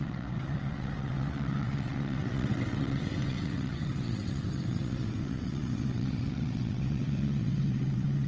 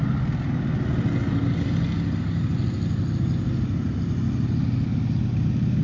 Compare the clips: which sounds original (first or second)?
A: second